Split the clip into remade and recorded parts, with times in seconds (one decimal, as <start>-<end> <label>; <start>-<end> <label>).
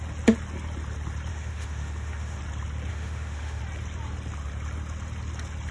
0.0-1.3 recorded; 1.3-2.4 remade; 2.4-2.9 recorded; 2.9-3.6 remade; 3.6-5.7 recorded